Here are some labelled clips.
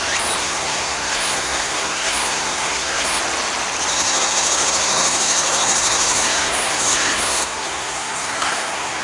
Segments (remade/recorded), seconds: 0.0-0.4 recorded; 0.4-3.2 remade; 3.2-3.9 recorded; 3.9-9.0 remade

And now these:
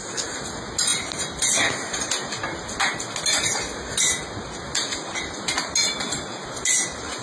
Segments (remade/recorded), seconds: 0.0-7.2 recorded

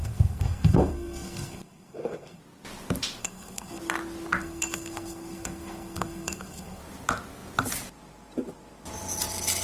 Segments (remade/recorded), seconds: 0.0-2.4 remade; 2.4-3.2 recorded; 3.2-3.8 remade; 3.8-4.4 recorded; 4.4-6.8 remade; 6.8-9.6 recorded